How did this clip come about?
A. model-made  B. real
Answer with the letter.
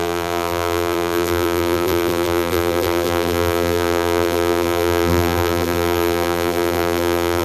A